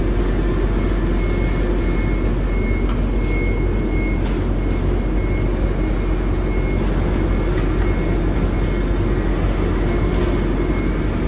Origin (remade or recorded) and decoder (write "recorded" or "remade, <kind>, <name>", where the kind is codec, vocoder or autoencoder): recorded